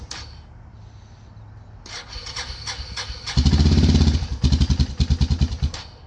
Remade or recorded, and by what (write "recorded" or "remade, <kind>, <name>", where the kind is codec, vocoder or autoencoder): recorded